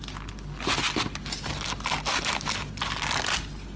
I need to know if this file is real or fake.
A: real